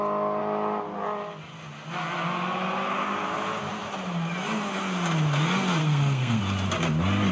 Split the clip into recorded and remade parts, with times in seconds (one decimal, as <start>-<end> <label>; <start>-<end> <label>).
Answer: 0.0-5.8 recorded; 5.8-6.4 remade; 6.4-7.3 recorded